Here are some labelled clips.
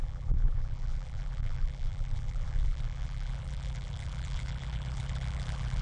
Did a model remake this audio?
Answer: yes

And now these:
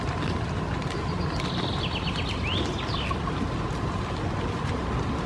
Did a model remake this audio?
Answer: no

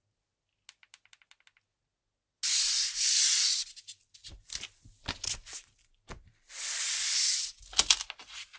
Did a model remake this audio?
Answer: no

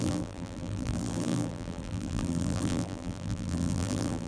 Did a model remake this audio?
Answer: yes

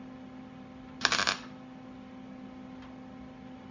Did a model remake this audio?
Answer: no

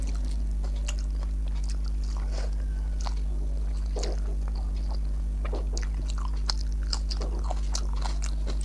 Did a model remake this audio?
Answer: no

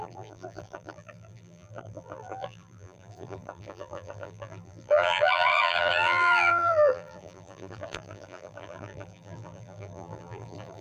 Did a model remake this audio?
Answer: yes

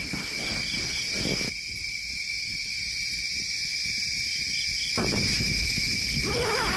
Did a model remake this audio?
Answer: no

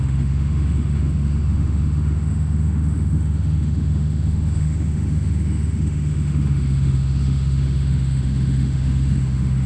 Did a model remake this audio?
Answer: yes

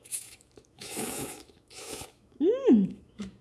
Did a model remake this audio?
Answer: yes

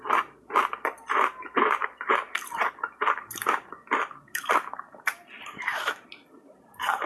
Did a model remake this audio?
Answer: yes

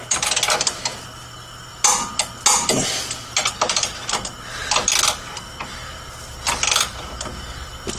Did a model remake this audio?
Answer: no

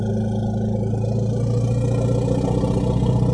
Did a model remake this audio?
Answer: no